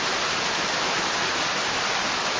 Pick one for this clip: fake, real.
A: fake